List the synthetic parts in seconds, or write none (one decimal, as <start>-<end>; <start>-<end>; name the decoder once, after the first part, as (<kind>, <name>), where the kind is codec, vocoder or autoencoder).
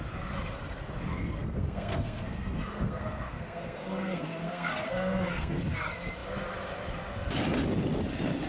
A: 1.1-5.6 (codec, SNAC)